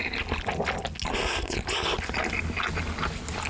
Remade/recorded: recorded